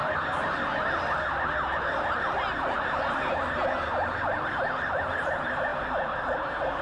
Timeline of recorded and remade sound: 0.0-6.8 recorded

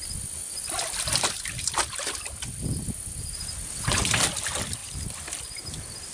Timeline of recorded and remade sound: 0.0-0.4 recorded; 0.4-1.0 remade; 1.0-4.8 recorded; 4.8-6.1 remade

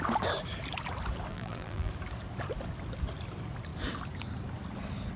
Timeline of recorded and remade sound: 0.0-1.3 recorded; 1.3-1.9 remade; 1.9-5.2 recorded

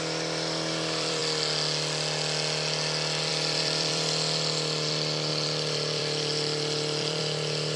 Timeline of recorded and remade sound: 0.0-1.2 remade; 1.2-3.3 recorded; 3.3-7.8 remade